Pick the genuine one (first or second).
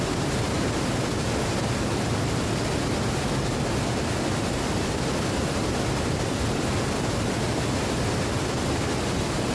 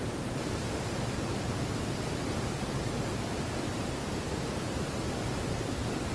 first